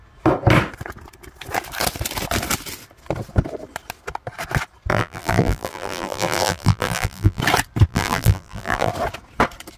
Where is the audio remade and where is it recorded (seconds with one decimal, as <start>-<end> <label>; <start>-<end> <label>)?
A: 0.0-4.9 recorded; 4.9-7.4 remade; 7.4-7.9 recorded; 7.9-8.9 remade; 8.9-9.8 recorded